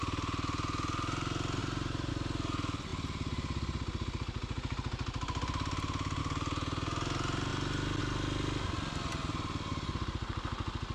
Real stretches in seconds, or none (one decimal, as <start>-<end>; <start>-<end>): 0.0-1.6; 2.1-10.9

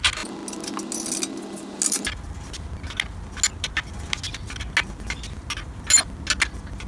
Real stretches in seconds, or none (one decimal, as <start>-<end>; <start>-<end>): 0.0-6.9